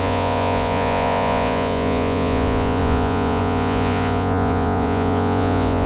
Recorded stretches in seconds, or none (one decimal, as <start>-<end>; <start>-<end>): none